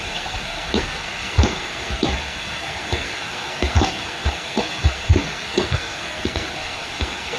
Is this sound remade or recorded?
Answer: remade